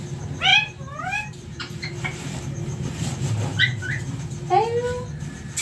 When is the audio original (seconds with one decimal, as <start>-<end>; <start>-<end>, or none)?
0.0-0.5; 3.9-5.6